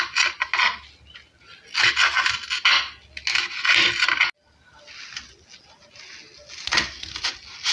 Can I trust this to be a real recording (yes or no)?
yes